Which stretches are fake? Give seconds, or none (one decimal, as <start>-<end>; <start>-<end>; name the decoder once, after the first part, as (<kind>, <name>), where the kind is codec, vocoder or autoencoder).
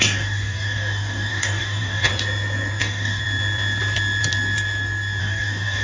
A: 0.0-2.1 (codec, DAC); 2.8-3.2; 5.2-5.8